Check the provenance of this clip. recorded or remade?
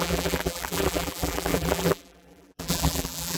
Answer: remade